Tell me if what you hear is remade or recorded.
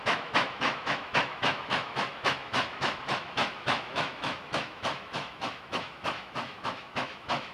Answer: remade